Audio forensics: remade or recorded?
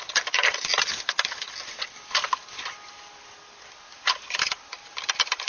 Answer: recorded